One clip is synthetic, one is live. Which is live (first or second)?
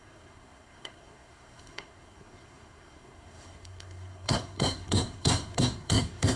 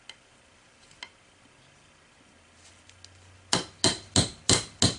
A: second